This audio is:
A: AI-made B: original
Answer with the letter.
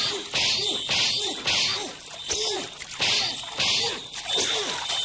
B